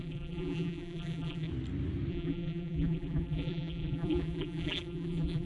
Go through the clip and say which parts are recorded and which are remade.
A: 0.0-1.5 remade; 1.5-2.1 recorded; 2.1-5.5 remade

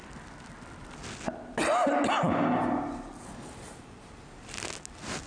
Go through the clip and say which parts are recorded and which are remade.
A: 0.0-5.3 recorded

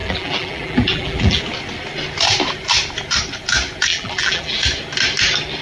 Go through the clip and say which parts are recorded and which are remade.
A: 0.0-1.4 remade; 1.4-3.9 recorded; 3.9-4.6 remade; 4.6-5.6 recorded

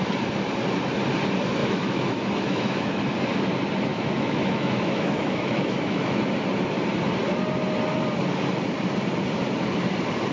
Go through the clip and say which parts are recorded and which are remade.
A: 0.0-1.6 recorded; 1.6-3.0 remade; 3.0-3.9 recorded; 3.9-6.2 remade; 6.2-10.3 recorded

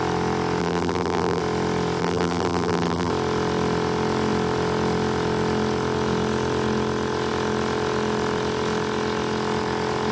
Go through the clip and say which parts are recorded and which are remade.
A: 0.0-0.6 recorded; 0.6-1.4 remade; 1.4-2.0 recorded; 2.0-3.1 remade; 3.1-10.1 recorded